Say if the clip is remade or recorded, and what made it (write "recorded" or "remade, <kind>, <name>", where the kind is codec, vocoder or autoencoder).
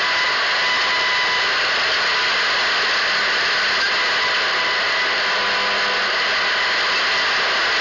recorded